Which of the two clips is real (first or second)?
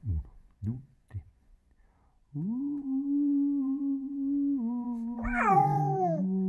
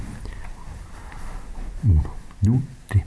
second